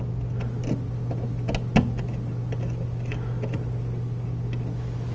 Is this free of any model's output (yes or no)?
yes